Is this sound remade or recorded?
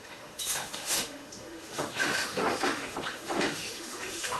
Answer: remade